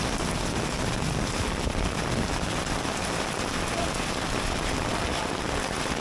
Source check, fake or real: real